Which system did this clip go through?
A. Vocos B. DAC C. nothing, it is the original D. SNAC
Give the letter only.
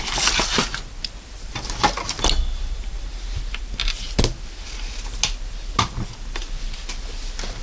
C